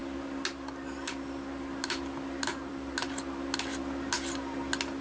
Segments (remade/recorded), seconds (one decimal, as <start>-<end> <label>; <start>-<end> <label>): 0.0-5.0 recorded